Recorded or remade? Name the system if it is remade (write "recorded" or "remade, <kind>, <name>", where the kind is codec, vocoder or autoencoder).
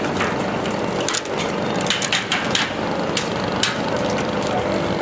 recorded